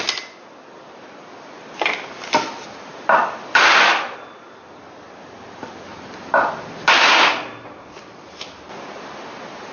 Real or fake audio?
real